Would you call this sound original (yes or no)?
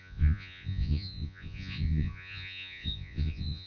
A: no